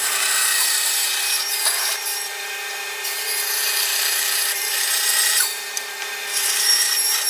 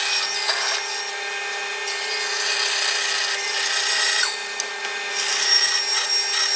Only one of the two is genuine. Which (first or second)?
second